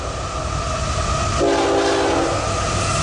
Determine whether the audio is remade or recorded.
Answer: recorded